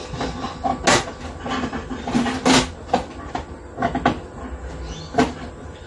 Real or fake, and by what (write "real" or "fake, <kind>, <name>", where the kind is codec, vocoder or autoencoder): real